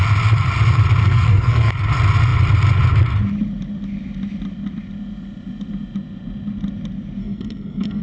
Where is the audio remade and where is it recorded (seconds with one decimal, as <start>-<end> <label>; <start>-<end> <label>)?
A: 0.0-1.0 recorded; 1.0-1.7 remade; 1.7-7.2 recorded; 7.2-8.0 remade